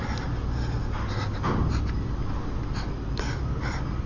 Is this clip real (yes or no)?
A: yes